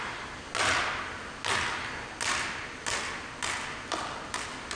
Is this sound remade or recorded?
recorded